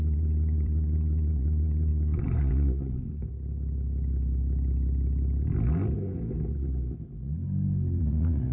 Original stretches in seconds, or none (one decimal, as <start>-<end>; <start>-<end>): 3.2-8.0